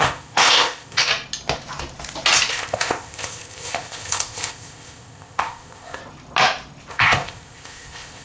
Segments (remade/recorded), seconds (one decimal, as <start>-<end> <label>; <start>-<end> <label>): 0.0-1.1 remade; 1.1-2.5 recorded; 2.5-6.0 remade; 6.0-6.9 recorded; 6.9-8.2 remade